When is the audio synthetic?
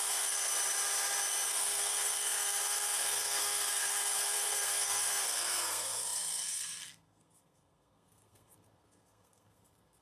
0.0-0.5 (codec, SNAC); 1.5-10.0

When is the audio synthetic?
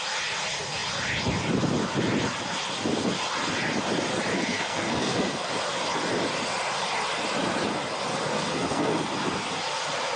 4.3-5.5 (codec, SNAC); 8.3-9.1